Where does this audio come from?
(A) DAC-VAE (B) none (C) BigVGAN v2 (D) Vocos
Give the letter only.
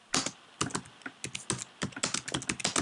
B